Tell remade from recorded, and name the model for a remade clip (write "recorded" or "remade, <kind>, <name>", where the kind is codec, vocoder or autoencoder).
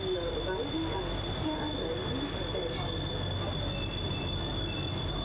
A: recorded